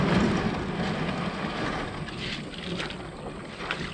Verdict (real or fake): real